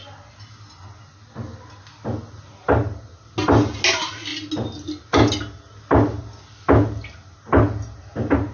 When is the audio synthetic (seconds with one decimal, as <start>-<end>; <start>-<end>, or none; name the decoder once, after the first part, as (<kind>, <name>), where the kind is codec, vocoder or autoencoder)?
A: none